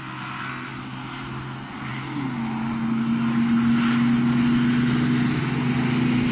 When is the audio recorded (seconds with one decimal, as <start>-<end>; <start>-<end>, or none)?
0.7-6.3